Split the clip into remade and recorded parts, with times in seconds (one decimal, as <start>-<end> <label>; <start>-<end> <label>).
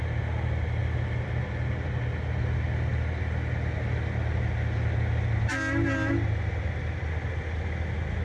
0.0-8.2 recorded